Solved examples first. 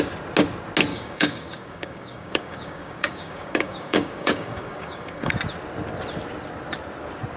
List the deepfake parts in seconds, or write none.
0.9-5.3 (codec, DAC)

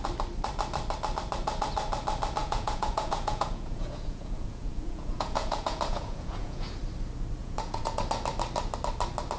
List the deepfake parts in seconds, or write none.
2.4-6.8 (vocoder, Vocos); 7.4-8.0

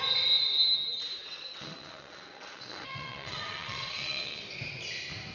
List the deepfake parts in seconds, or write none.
1.2-4.4 (vocoder, WaveNeXt)